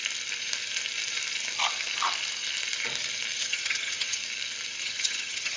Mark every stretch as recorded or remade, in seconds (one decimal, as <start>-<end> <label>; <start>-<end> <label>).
0.0-3.4 recorded; 3.4-4.2 remade; 4.2-4.8 recorded; 4.8-5.6 remade